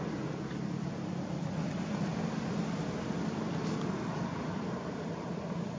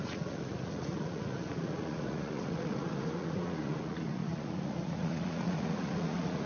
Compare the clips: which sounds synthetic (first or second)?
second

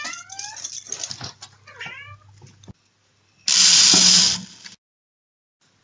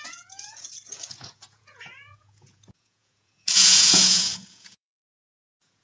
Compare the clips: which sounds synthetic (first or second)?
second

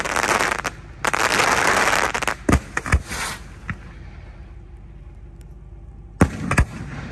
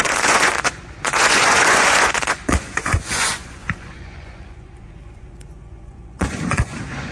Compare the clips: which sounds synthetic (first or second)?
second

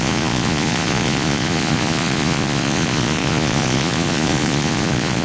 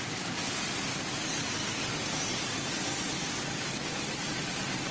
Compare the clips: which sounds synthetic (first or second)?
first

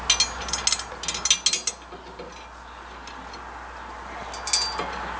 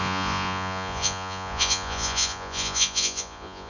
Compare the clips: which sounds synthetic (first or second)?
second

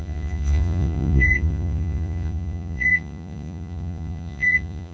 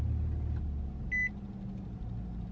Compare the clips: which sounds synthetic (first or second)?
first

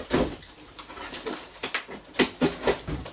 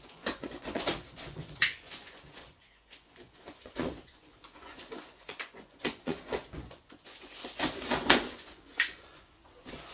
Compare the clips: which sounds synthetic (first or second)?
second